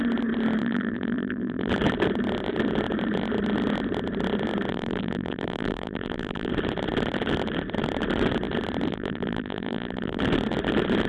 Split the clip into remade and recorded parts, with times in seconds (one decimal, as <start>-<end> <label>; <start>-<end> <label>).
0.0-0.6 recorded; 0.6-1.7 remade; 1.7-4.7 recorded; 4.7-6.5 remade; 6.5-8.9 recorded; 8.9-10.2 remade; 10.2-11.1 recorded